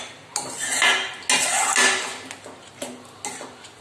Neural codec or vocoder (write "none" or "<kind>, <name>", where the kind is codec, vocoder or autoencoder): none